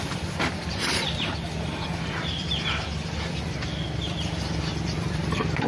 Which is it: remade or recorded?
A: remade